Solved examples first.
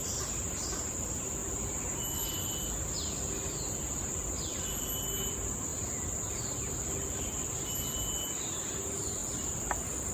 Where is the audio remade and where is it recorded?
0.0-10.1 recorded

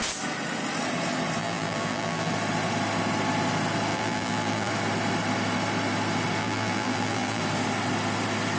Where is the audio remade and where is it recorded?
0.0-1.4 recorded; 1.4-2.3 remade; 2.3-3.9 recorded; 3.9-4.7 remade; 4.7-6.4 recorded; 6.4-7.4 remade; 7.4-8.6 recorded